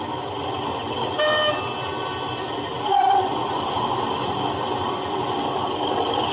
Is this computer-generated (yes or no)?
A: no